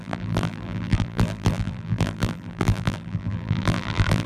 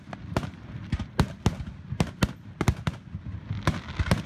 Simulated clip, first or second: first